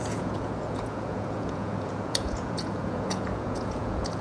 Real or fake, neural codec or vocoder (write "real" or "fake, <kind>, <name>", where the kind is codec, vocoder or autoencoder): fake, vocoder, Vocos